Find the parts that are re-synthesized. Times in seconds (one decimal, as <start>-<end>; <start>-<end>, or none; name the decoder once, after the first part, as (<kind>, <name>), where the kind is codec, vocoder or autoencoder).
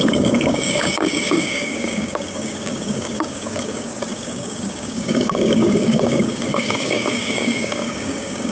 0.0-8.5 (codec, DAC)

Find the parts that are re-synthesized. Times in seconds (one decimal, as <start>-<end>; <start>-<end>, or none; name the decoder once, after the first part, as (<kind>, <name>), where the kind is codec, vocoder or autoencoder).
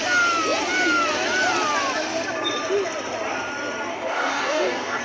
3.9-5.0 (codec, DAC)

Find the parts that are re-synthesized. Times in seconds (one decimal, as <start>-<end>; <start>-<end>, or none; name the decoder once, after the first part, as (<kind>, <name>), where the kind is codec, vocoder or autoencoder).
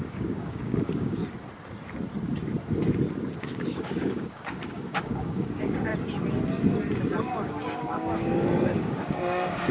0.0-1.2 (codec, DAC); 3.4-5.9; 7.2-9.7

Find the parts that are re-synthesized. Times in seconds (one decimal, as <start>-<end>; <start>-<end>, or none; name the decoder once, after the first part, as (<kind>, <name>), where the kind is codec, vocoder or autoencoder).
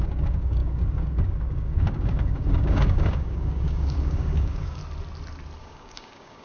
0.0-4.8 (codec, DAC); 5.6-6.4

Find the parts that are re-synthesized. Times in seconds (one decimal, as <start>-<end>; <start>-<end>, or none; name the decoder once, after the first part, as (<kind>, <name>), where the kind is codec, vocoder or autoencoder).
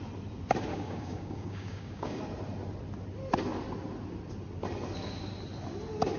0.7-2.2 (codec, DAC)